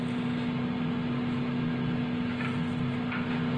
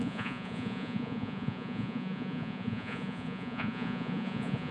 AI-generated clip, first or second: second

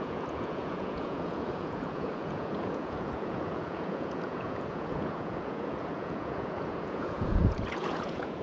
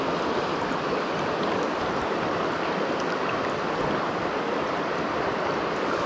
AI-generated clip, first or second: first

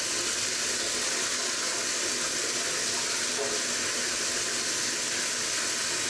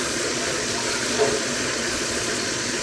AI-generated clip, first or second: second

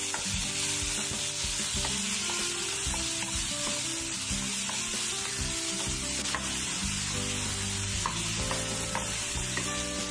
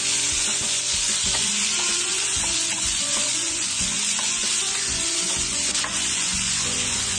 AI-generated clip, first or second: second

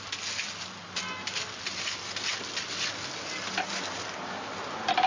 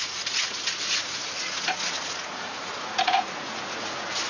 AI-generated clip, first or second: second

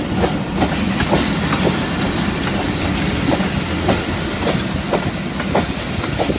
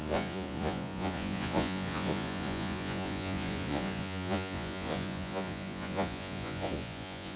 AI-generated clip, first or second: second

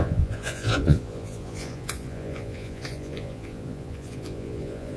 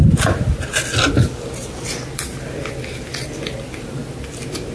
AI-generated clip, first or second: first